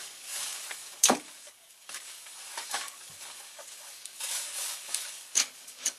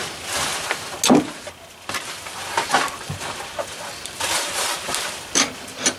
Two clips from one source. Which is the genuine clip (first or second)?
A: second